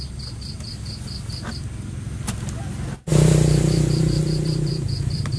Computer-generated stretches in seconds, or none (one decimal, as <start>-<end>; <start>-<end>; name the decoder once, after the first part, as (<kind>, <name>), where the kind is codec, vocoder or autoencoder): 3.1-5.4 (vocoder, BigVGAN v2)